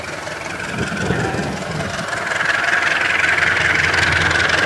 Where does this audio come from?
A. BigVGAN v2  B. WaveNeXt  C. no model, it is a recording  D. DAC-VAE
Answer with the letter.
C